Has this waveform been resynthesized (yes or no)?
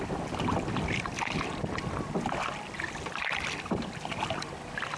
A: no